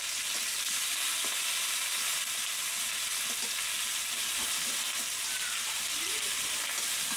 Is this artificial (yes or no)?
no